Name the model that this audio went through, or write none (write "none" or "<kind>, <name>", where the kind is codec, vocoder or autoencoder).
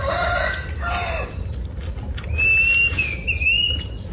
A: none